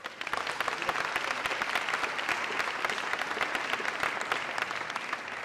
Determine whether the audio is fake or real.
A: real